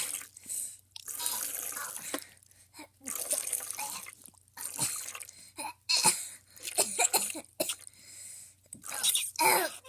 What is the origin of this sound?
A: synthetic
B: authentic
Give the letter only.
B